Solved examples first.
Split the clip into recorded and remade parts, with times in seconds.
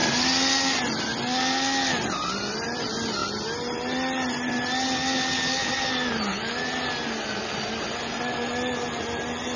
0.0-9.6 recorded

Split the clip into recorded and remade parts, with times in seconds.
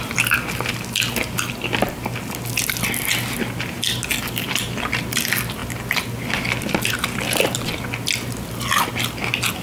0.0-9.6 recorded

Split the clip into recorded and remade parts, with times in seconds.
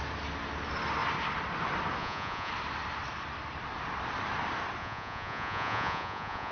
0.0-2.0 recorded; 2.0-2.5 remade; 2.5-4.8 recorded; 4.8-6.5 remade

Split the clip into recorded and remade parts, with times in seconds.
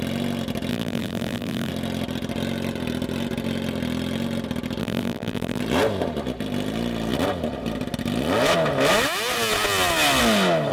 0.0-0.7 recorded; 0.7-1.7 remade; 1.7-4.8 recorded; 4.8-5.6 remade; 5.6-10.7 recorded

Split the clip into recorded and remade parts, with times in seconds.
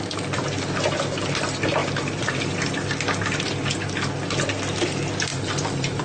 0.0-1.8 recorded; 1.8-2.4 remade; 2.4-5.3 recorded; 5.3-6.0 remade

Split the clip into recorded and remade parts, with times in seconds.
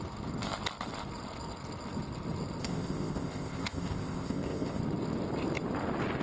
0.0-2.6 recorded; 2.6-4.8 remade; 4.8-6.2 recorded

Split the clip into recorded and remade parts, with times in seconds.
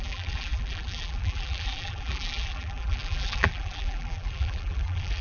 0.0-5.2 remade